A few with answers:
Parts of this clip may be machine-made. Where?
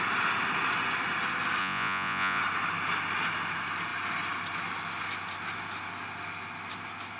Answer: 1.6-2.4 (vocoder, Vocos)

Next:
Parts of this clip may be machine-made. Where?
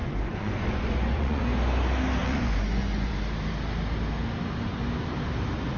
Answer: 0.0-1.4 (vocoder, Vocos); 2.2-3.1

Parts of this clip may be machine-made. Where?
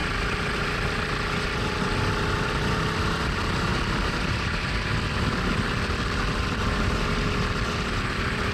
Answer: 3.7-4.9 (vocoder, BigVGAN v2); 6.6-7.3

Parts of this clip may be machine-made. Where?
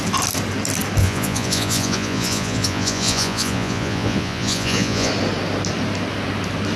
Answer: 1.0-5.1 (vocoder, Vocos)